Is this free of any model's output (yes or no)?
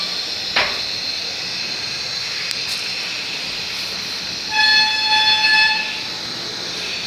yes